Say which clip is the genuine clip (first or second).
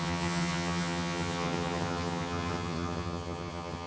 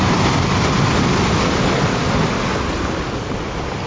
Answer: second